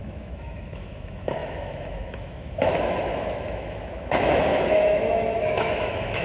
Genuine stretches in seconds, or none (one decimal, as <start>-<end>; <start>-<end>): none